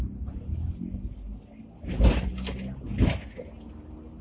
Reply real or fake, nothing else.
real